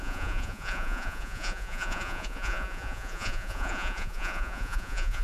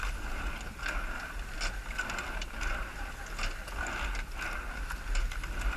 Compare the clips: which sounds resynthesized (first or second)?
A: first